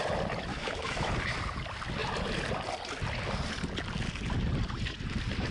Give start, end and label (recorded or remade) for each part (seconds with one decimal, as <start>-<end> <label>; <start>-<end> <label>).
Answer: 0.0-0.5 recorded; 0.5-1.1 remade; 1.1-5.5 recorded